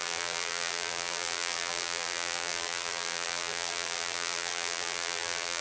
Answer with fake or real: fake